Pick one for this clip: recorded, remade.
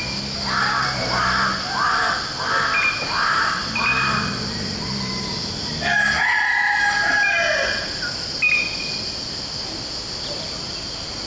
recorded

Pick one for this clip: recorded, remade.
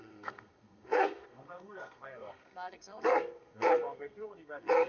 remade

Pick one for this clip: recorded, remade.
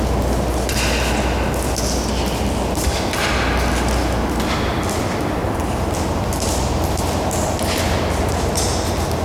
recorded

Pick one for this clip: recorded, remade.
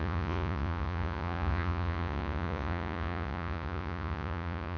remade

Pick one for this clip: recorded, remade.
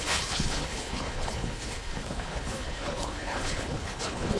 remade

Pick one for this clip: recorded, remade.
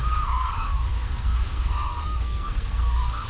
remade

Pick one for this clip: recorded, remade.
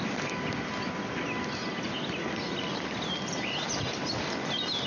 recorded